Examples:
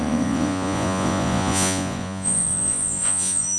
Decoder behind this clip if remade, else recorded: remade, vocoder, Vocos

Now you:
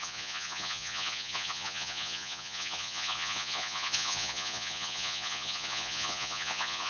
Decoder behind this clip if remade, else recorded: remade, vocoder, Vocos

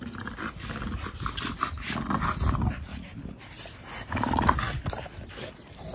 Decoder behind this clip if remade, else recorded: recorded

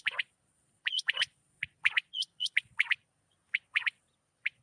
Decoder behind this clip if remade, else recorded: remade, vocoder, Vocos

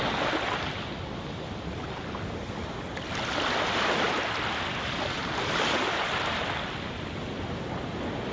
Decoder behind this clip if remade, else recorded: recorded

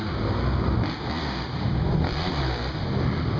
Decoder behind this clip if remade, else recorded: recorded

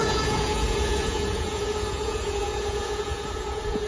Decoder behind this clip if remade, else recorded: remade, vocoder, Vocos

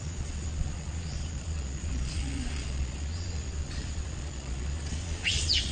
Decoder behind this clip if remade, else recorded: remade, vocoder, Vocos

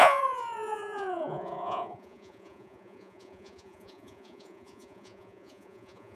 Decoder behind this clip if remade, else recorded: remade, vocoder, Vocos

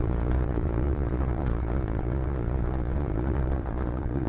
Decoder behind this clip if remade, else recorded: remade, vocoder, Vocos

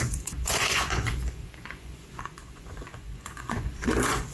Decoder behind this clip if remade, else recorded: remade, vocoder, Vocos